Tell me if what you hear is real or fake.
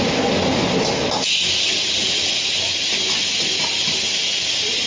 real